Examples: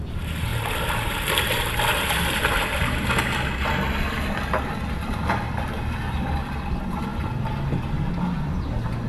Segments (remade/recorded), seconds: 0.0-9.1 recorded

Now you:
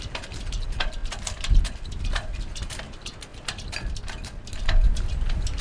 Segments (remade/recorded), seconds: 0.0-5.6 recorded

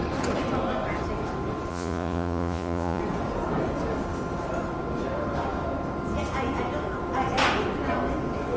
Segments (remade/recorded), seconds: 0.0-1.7 recorded; 1.7-3.0 remade; 3.0-8.6 recorded

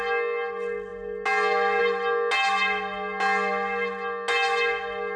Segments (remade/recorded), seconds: 0.0-5.2 recorded

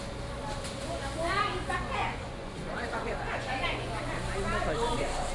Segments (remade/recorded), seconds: 0.0-2.0 recorded; 2.0-4.0 remade; 4.0-5.3 recorded

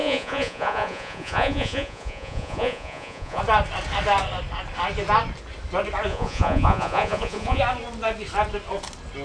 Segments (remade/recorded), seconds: 0.0-3.4 remade; 3.4-6.1 recorded; 6.1-7.6 remade; 7.6-9.2 recorded

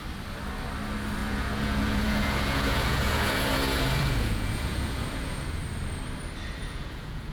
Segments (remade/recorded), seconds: 0.0-1.2 recorded; 1.2-5.6 remade; 5.6-6.6 recorded; 6.6-7.3 remade